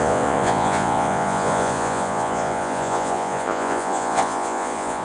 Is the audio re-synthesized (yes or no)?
yes